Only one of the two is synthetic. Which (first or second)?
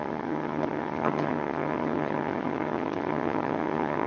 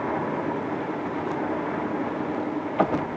first